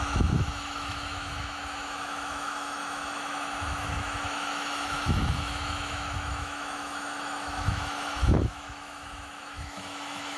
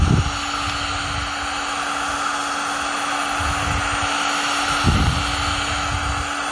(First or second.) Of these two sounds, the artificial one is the first